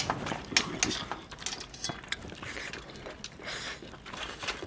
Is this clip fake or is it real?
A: real